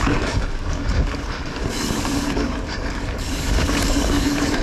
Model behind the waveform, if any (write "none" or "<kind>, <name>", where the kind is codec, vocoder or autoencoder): codec, DAC